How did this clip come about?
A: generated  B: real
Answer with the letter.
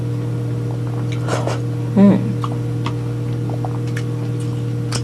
B